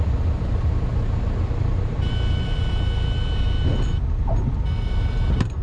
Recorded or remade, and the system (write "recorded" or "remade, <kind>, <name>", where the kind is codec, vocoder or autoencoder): recorded